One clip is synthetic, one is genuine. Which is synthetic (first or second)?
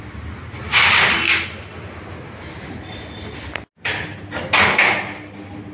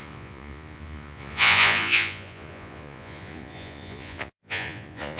second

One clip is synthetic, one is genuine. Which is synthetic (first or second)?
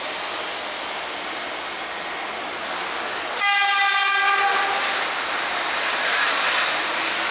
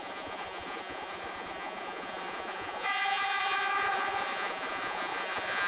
second